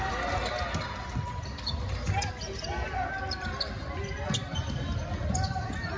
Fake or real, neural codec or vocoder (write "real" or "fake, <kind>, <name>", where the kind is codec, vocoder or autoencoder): real